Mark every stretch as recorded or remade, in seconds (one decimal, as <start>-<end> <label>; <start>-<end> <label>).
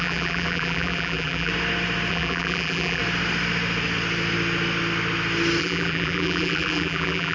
0.0-1.5 remade; 1.5-2.1 recorded; 2.1-3.0 remade; 3.0-5.6 recorded; 5.6-7.3 remade